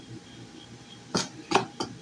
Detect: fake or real real